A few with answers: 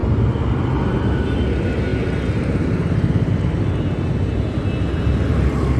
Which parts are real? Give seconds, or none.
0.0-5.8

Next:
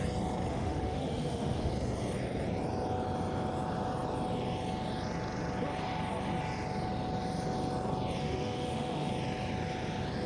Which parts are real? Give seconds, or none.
0.0-0.5; 1.7-8.2; 9.1-10.3

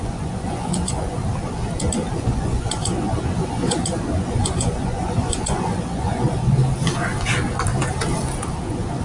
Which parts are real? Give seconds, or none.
1.2-2.1; 6.6-8.6

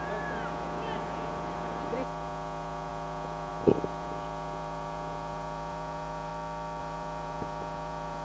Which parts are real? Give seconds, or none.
6.3-6.8